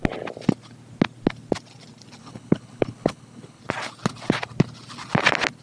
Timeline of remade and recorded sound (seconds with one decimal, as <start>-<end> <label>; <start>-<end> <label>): 0.0-2.2 recorded; 2.2-3.6 remade; 3.6-5.6 recorded